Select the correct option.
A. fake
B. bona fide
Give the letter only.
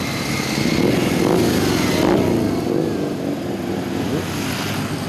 B